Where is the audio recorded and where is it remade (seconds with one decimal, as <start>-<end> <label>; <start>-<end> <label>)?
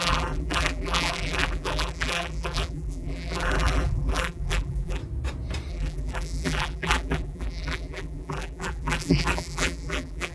0.0-5.0 remade; 5.0-5.7 recorded; 5.7-10.3 remade